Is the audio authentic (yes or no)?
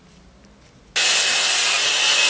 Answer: yes